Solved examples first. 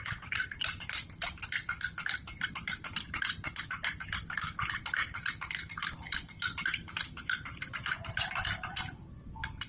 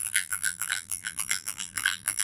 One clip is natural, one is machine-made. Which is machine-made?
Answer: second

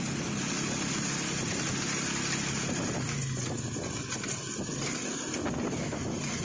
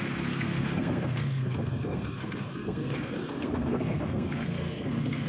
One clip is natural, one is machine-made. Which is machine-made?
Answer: second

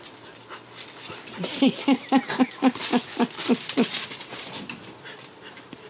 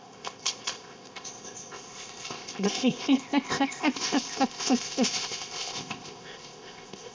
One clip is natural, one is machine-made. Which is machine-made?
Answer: second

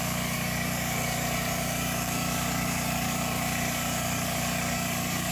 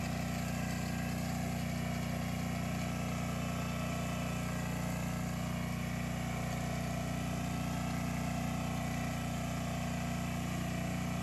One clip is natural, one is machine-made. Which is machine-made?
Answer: first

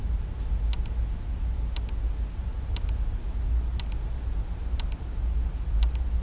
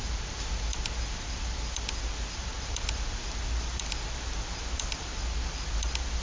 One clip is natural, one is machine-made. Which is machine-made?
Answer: second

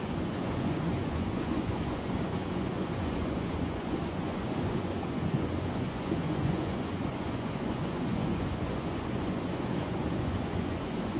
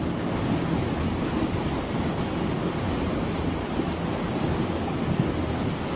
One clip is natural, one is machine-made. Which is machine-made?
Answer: first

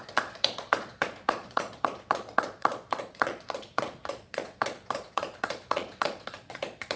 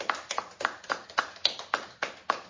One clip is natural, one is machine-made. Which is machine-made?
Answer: first